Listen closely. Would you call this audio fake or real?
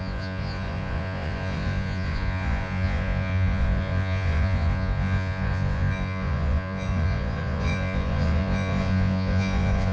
fake